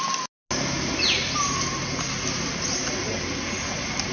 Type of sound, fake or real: real